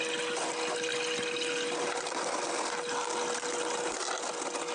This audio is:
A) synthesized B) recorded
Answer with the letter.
B